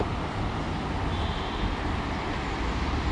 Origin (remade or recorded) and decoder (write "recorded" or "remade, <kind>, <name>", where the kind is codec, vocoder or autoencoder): recorded